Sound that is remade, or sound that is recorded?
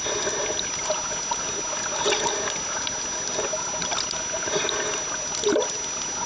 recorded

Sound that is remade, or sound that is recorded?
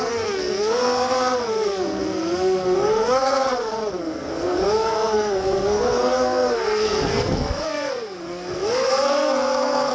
remade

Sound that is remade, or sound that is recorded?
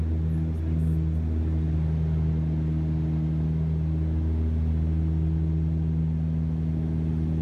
recorded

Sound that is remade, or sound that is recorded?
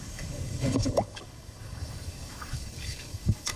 remade